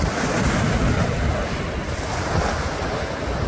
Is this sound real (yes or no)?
yes